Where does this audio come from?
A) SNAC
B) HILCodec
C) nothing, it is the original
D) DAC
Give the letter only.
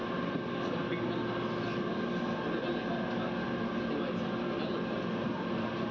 C